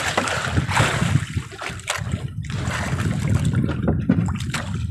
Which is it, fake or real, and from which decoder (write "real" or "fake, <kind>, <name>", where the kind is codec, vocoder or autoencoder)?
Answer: real